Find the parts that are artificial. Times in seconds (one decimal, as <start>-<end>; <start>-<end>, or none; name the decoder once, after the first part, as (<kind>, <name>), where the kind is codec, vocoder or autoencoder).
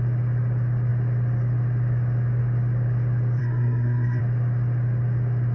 3.4-4.2 (codec, SNAC)